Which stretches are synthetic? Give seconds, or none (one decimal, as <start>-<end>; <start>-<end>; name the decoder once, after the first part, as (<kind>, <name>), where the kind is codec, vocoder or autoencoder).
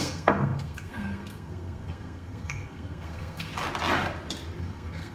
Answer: 0.0-3.5 (codec, SNAC); 4.6-5.1